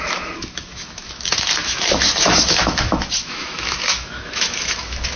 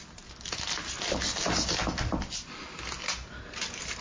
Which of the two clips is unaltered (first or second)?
second